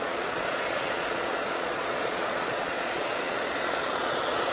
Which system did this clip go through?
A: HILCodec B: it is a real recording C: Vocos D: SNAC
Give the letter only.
C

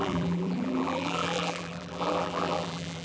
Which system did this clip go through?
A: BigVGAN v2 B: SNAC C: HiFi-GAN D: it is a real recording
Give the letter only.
A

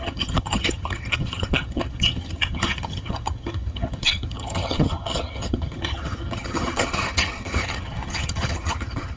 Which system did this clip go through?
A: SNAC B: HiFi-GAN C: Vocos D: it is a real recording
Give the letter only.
B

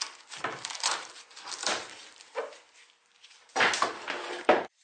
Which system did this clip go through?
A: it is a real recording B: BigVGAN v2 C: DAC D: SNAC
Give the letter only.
A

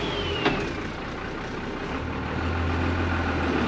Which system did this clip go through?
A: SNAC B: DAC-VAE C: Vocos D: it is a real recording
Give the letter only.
D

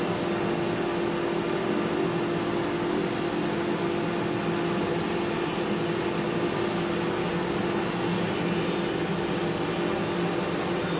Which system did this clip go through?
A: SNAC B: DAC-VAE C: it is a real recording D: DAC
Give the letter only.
C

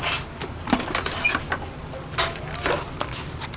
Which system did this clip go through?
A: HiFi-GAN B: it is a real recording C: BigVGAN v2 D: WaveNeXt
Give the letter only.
B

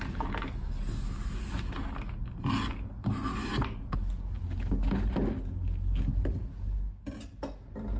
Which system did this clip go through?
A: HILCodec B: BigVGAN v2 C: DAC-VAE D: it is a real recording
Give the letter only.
D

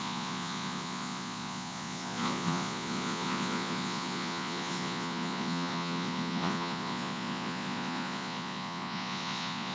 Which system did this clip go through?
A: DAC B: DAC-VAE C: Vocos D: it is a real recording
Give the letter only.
C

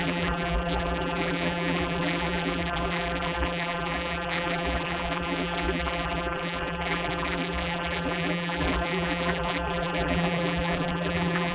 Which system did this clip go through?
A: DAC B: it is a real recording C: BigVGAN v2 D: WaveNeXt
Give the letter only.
C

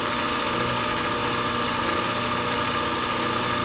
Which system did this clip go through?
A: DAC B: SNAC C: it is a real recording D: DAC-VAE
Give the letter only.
C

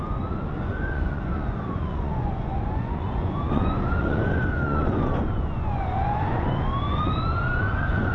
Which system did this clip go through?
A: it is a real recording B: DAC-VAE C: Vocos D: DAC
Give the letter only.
C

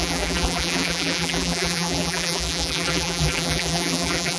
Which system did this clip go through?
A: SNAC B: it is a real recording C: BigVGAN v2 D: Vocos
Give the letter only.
C